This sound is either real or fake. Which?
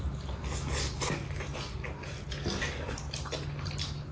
real